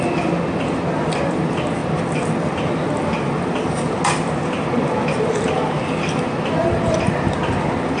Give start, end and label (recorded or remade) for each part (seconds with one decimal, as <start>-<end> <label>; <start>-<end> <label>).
0.0-8.0 recorded